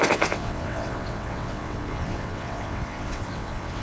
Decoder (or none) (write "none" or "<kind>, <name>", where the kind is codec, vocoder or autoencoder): vocoder, WaveNeXt